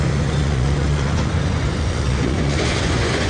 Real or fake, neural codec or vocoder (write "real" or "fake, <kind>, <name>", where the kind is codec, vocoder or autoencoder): fake, vocoder, Vocos